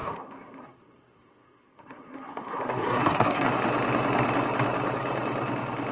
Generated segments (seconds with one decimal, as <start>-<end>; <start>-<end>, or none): 0.0-3.5